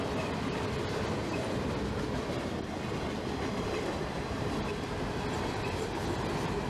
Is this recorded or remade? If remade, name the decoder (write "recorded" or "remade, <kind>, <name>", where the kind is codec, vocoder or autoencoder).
recorded